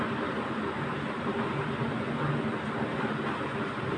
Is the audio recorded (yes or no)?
yes